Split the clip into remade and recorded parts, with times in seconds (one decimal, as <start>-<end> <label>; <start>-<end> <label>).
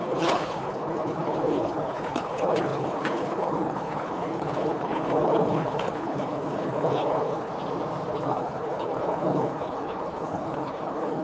0.0-7.5 remade; 7.5-8.1 recorded; 8.1-11.2 remade